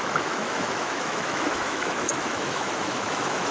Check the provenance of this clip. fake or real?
fake